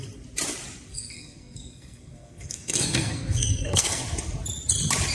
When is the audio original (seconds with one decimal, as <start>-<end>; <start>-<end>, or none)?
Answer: 0.0-0.9; 4.0-5.1